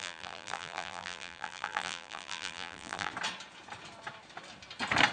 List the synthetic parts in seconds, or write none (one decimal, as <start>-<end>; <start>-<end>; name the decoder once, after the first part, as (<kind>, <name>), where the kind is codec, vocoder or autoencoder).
0.0-3.1 (vocoder, BigVGAN v2)